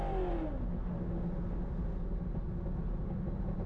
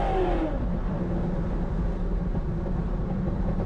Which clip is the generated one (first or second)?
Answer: second